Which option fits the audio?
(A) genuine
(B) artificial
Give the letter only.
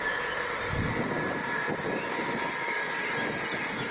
A